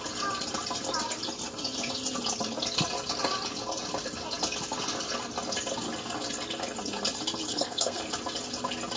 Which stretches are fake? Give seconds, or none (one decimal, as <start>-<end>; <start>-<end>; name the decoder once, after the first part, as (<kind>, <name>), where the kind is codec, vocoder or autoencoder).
7.5-8.0 (codec, SNAC)